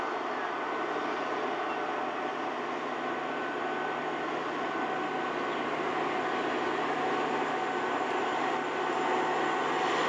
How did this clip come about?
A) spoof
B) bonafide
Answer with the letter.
B